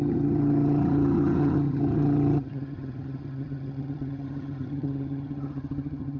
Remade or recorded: remade